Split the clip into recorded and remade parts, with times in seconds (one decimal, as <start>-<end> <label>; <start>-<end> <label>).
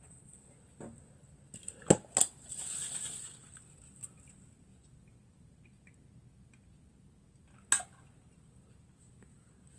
0.0-9.8 recorded